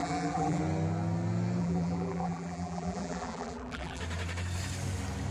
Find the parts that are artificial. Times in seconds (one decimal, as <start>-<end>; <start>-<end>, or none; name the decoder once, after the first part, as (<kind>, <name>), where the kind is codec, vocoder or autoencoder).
0.0-0.6 (vocoder, BigVGAN v2); 1.6-4.0